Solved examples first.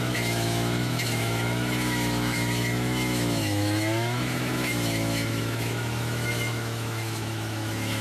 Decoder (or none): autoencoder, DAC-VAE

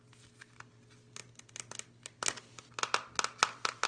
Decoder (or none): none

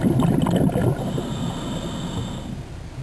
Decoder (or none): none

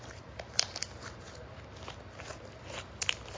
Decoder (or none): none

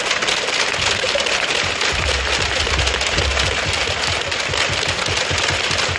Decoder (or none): none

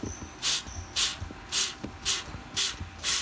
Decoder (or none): none